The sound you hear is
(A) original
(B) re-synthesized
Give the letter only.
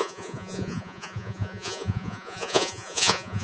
B